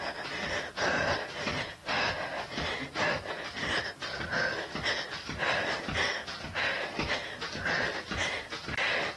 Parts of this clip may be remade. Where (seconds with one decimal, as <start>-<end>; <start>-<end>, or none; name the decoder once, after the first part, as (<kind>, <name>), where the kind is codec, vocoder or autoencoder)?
none

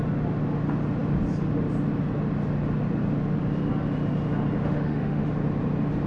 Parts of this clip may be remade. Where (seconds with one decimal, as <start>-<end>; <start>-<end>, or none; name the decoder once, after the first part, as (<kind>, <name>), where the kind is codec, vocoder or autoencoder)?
4.6-5.3 (autoencoder, DAC-VAE)

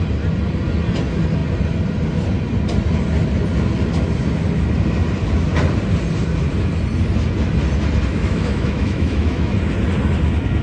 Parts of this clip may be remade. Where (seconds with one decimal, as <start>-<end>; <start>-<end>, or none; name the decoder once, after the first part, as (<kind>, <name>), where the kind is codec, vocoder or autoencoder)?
8.1-9.5 (autoencoder, DAC-VAE)

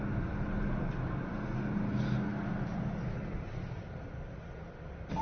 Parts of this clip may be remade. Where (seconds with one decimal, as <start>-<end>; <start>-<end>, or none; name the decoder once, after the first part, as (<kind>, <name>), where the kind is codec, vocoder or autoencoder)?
none

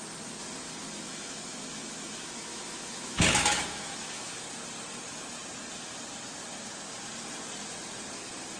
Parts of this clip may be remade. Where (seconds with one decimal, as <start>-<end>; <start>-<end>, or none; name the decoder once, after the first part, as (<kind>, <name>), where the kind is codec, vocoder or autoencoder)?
0.8-4.4 (autoencoder, DAC-VAE)

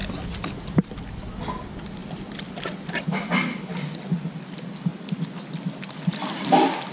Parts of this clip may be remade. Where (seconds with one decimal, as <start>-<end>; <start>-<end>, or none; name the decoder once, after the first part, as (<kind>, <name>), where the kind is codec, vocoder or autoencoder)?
none

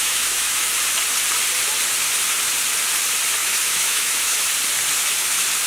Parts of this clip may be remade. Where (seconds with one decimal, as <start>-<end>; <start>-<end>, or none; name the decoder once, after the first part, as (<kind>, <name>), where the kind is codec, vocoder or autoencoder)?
0.0-0.7 (autoencoder, DAC-VAE); 3.4-4.5